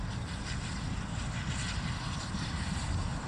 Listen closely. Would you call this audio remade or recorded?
recorded